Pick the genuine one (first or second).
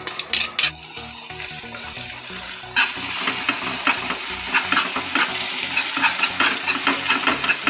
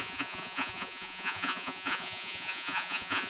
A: first